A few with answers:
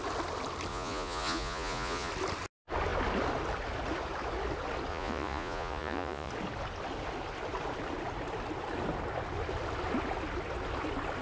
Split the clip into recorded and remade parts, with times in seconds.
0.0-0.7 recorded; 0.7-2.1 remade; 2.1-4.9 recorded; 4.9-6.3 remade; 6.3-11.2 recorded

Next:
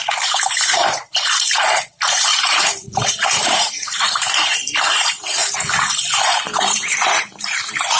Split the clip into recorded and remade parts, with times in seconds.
0.0-8.0 remade

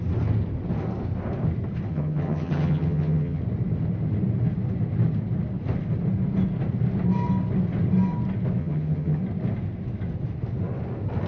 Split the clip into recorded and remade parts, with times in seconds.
0.0-1.9 recorded; 1.9-3.4 remade; 3.4-8.6 recorded; 8.6-9.2 remade; 9.2-11.3 recorded

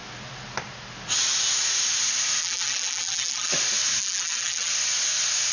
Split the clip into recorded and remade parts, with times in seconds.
0.0-2.4 recorded; 2.4-3.5 remade; 3.5-4.0 recorded; 4.0-4.7 remade; 4.7-5.5 recorded

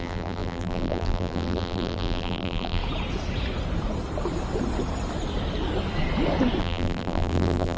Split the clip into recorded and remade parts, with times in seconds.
0.0-2.8 remade; 2.8-6.6 recorded; 6.6-7.8 remade

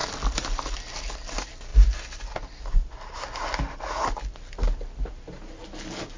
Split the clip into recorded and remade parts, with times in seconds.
0.0-6.2 recorded

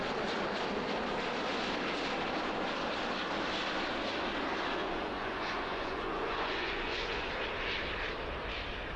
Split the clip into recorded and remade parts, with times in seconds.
0.0-4.8 recorded; 4.8-7.3 remade; 7.3-9.0 recorded

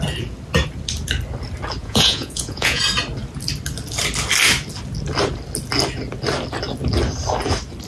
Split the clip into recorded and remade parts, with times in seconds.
0.0-1.8 recorded; 1.8-2.8 remade; 2.8-7.9 recorded